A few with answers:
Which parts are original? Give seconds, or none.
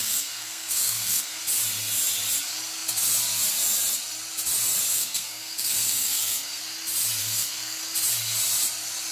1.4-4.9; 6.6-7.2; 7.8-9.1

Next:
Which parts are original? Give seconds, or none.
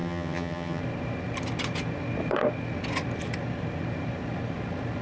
0.8-5.0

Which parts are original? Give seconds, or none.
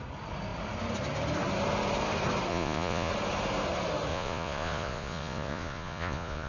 0.0-2.5; 3.1-4.1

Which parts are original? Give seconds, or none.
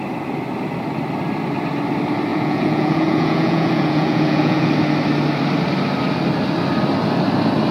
0.0-2.3; 4.7-7.7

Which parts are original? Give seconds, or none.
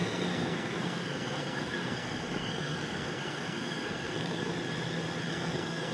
4.5-5.3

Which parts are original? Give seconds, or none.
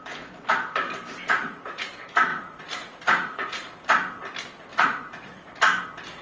0.0-1.4; 1.9-2.3; 3.8-4.7; 5.5-6.2